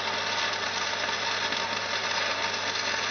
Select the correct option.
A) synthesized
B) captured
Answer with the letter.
B